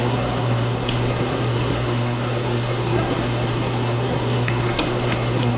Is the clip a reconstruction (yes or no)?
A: yes